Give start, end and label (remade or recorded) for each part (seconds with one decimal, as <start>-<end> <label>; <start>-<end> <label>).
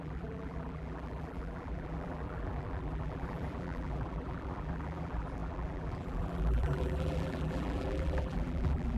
0.0-9.0 remade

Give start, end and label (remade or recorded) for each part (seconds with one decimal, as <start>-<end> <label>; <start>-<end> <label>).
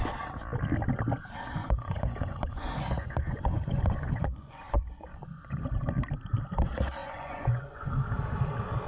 0.0-1.6 recorded; 1.6-5.9 remade; 5.9-7.0 recorded; 7.0-7.9 remade; 7.9-8.9 recorded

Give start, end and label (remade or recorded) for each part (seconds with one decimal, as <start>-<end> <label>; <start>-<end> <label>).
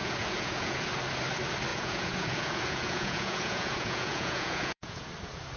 0.0-0.9 remade; 0.9-1.7 recorded; 1.7-5.1 remade; 5.1-5.6 recorded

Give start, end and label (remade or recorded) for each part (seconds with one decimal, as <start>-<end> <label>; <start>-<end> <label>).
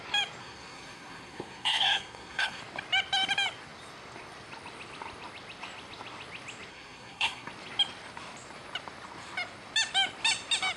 0.0-0.4 recorded; 0.4-2.6 remade; 2.6-6.7 recorded; 6.7-7.5 remade; 7.5-10.8 recorded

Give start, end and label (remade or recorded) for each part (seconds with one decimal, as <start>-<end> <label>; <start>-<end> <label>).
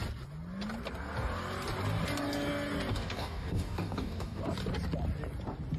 0.0-2.9 recorded; 2.9-4.4 remade; 4.4-5.8 recorded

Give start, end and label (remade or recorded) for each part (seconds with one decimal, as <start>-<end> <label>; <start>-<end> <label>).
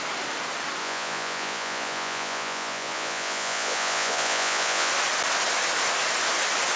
0.0-0.8 recorded; 0.8-4.9 remade; 4.9-6.8 recorded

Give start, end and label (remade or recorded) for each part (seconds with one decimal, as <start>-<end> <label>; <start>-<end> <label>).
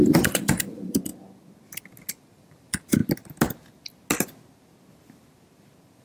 0.0-1.1 remade; 1.1-2.3 recorded; 2.3-3.0 remade; 3.0-6.0 recorded